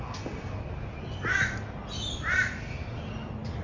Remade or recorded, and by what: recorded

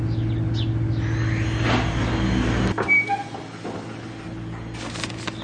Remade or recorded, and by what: recorded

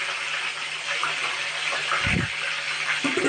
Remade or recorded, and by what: recorded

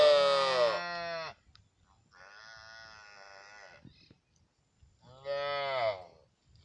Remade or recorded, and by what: recorded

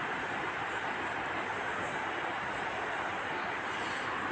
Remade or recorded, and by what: recorded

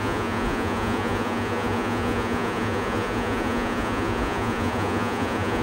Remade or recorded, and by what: remade, vocoder, Vocos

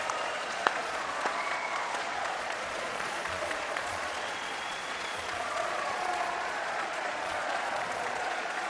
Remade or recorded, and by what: remade, vocoder, Vocos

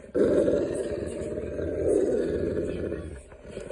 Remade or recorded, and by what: recorded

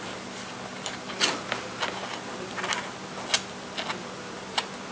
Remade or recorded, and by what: recorded